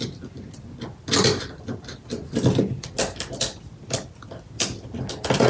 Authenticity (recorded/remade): recorded